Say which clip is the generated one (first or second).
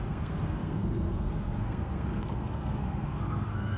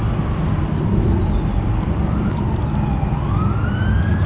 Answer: first